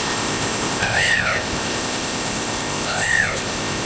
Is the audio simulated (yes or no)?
yes